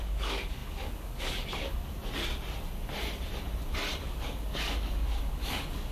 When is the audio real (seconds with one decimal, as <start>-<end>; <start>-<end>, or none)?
2.0-4.0